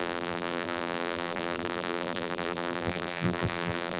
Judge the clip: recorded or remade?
remade